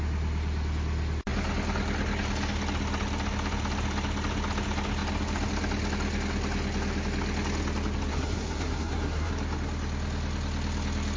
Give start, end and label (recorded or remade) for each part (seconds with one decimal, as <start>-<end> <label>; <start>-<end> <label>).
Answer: 0.0-8.1 recorded; 8.1-9.3 remade; 9.3-11.2 recorded

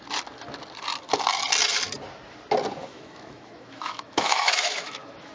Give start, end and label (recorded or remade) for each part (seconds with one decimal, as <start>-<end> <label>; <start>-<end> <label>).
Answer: 0.0-2.8 recorded; 2.8-5.3 remade

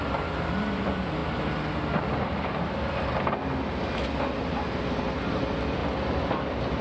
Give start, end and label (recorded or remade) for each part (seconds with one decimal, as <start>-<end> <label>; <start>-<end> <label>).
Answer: 0.0-1.2 remade; 1.2-5.2 recorded; 5.2-6.8 remade